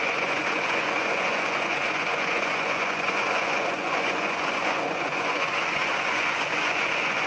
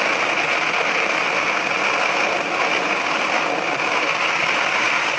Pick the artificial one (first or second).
first